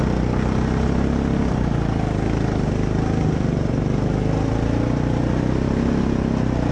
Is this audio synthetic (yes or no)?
no